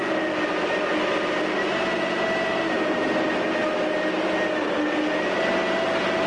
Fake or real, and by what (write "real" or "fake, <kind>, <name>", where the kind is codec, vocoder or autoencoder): real